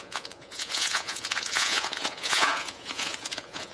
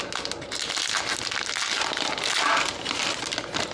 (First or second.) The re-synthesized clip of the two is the first